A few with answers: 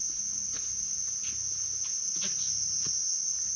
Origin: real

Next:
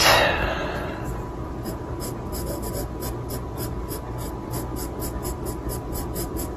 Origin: real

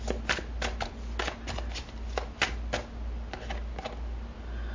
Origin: real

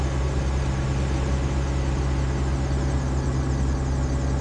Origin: real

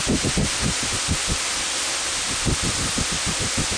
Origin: real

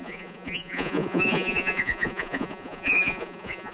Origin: fake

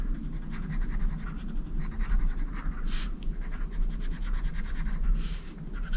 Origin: real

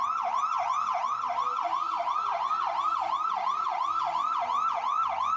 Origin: real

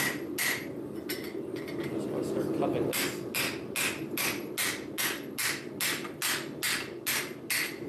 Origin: real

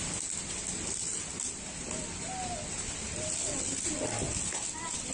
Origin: real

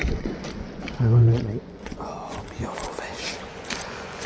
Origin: fake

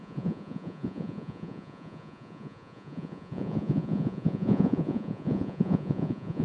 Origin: fake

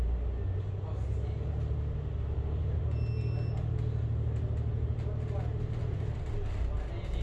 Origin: real